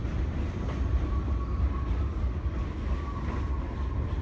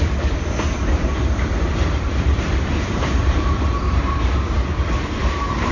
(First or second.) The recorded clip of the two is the first